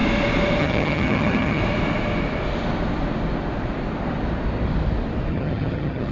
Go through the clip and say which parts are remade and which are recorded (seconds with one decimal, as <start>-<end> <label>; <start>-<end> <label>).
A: 0.0-0.6 recorded; 0.6-1.6 remade; 1.6-5.3 recorded; 5.3-6.1 remade